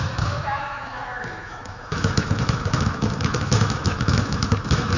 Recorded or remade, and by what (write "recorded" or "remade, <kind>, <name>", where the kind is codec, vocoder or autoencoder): remade, autoencoder, DAC-VAE